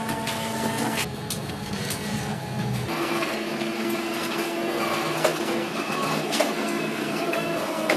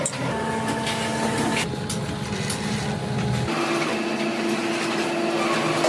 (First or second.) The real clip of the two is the second